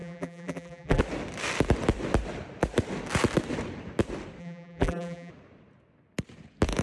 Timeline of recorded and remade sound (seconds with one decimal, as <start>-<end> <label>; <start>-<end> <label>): 0.0-1.0 remade; 1.0-4.4 recorded; 4.4-5.3 remade; 5.3-6.8 recorded